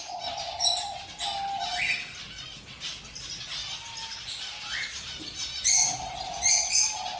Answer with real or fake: real